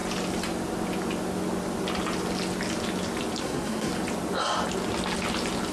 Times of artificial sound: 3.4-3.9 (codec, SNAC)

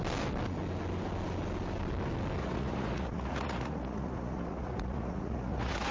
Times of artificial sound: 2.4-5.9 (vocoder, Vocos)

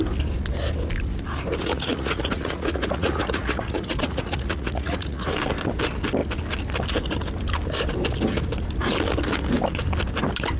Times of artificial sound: 1.6-5.3 (vocoder, Vocos)